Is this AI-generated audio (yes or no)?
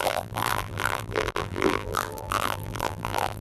yes